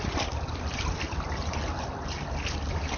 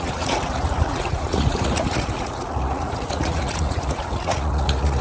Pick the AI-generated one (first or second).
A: second